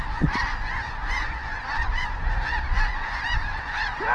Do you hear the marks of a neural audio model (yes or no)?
yes